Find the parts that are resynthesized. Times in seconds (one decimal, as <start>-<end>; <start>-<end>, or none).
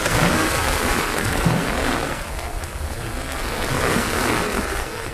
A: 0.0-5.1